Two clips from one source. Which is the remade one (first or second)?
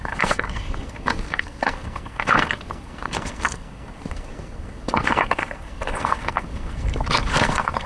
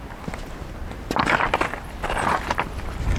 first